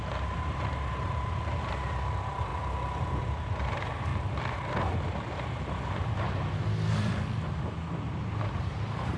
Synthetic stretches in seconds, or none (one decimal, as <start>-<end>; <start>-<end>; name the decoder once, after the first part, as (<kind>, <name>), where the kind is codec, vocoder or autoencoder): 0.0-2.5 (vocoder, BigVGAN v2); 3.2-4.1; 8.6-9.2